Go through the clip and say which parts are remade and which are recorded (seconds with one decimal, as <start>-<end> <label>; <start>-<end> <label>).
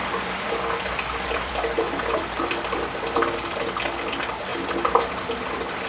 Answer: 0.0-3.5 remade; 3.5-4.5 recorded; 4.5-5.9 remade